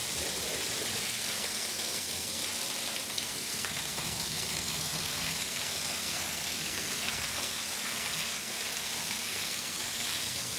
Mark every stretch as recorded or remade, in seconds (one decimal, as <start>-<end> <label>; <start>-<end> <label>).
0.0-1.0 recorded; 1.0-2.4 remade; 2.4-3.1 recorded; 3.1-10.6 remade